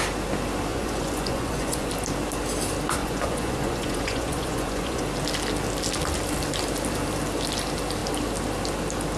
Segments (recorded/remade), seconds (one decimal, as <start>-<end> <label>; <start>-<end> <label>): 0.0-0.7 recorded; 0.7-1.9 remade; 1.9-3.0 recorded; 3.0-5.0 remade; 5.0-9.2 recorded